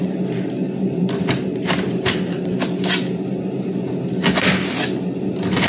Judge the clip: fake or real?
real